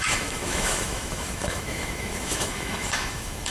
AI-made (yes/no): yes